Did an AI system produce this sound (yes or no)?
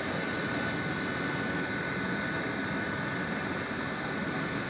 no